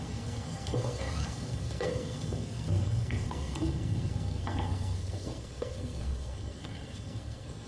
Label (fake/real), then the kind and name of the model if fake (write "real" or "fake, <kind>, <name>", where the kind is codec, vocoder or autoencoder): fake, codec, SNAC